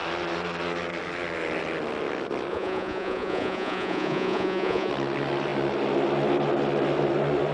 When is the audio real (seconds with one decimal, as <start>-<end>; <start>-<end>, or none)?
0.0-2.5; 4.9-7.5